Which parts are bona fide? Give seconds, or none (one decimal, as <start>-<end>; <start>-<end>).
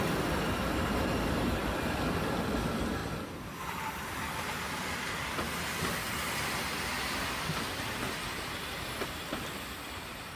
0.0-10.4